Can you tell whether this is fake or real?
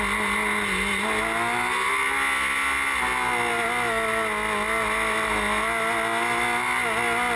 real